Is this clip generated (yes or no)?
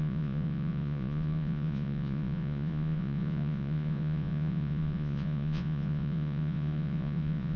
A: yes